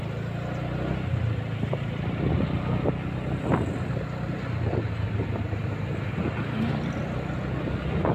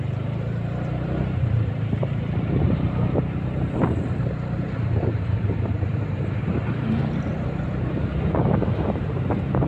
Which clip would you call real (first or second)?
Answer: first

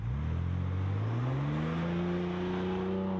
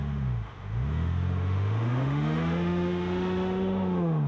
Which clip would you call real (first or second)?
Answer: first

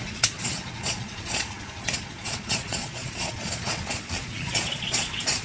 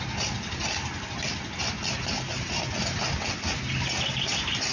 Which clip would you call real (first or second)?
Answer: second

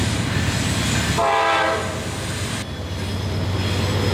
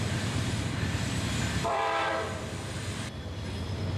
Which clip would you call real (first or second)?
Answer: first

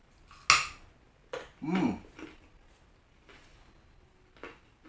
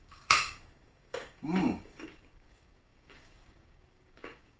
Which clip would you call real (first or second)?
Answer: first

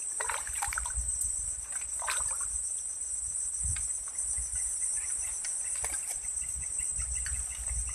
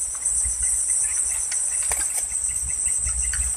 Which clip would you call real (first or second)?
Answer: second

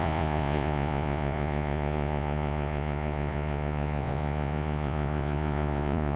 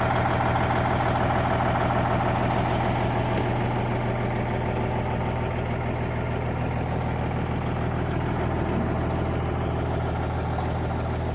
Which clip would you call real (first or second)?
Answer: second